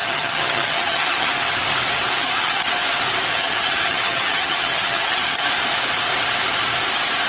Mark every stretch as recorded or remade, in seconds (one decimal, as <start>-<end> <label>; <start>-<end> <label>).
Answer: 0.0-1.3 remade; 1.3-2.2 recorded; 2.2-2.7 remade; 2.7-3.3 recorded; 3.3-5.4 remade; 5.4-7.3 recorded